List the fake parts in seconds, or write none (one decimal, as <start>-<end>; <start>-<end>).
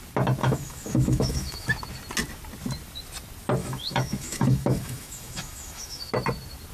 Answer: 0.4-1.7; 3.6-6.1